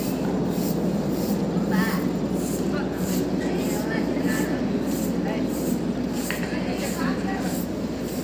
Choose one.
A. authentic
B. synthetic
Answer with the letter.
A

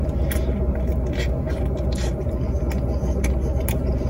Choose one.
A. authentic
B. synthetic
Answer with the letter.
A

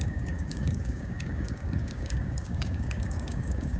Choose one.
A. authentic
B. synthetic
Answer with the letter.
B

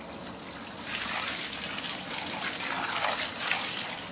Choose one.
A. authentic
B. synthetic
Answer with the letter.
A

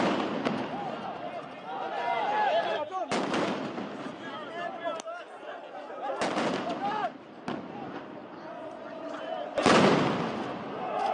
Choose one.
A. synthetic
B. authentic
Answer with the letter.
B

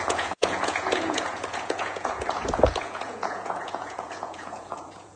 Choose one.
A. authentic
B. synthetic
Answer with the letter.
B